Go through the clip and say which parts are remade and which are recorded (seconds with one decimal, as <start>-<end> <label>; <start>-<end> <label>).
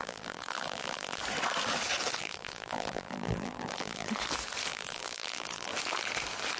0.0-1.2 remade; 1.2-2.2 recorded; 2.2-4.1 remade; 4.1-4.7 recorded; 4.7-5.7 remade; 5.7-6.6 recorded